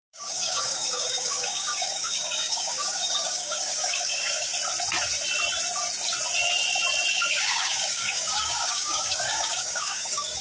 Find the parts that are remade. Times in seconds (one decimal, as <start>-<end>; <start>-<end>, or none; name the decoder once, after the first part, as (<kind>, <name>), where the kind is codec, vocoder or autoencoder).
0.0-4.5 (codec, DAC); 7.1-10.4